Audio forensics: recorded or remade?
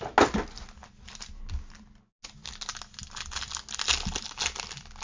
recorded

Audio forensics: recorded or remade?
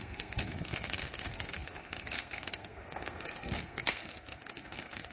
remade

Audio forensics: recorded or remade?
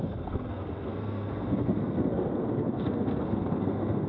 remade